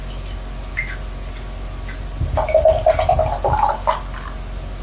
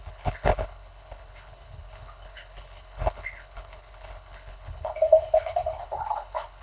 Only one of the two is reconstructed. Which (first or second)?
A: second